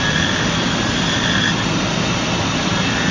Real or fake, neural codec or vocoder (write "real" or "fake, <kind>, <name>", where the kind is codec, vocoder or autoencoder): real